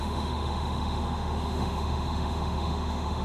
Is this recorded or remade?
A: remade